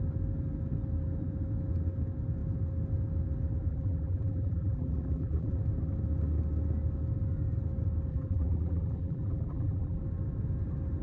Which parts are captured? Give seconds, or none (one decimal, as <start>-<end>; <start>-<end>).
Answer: 0.0-3.7; 5.6-8.1; 10.0-11.0